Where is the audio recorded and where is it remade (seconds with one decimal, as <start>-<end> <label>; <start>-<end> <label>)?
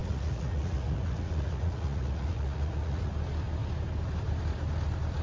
0.0-3.1 remade; 3.1-5.2 recorded